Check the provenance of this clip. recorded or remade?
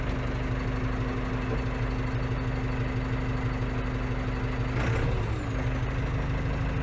recorded